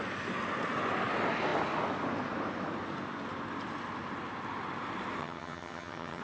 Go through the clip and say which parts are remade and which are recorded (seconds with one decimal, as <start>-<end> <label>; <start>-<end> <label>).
0.0-5.2 recorded; 5.2-6.2 remade